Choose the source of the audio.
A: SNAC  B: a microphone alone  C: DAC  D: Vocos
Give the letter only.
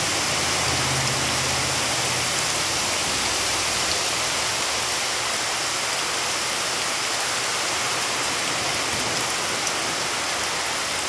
B